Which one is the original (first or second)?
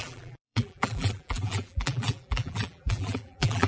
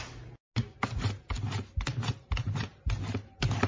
second